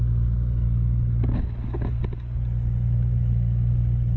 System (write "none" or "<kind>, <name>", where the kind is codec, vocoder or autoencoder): none